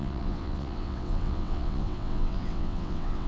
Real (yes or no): no